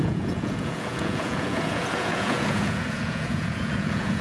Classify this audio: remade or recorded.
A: remade